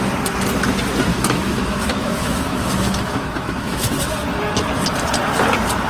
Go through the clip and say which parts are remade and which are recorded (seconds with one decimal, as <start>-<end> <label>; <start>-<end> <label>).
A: 0.0-1.1 recorded; 1.1-3.9 remade; 3.9-5.9 recorded